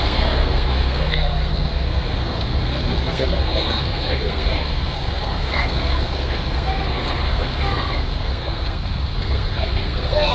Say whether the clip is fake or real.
fake